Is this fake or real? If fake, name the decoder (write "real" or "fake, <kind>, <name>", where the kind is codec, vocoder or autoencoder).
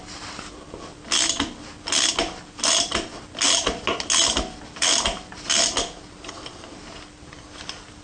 real